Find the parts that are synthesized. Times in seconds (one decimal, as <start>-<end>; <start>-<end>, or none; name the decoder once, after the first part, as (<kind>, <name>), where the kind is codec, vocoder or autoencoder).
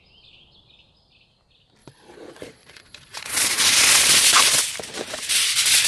1.8-4.4 (vocoder, Vocos)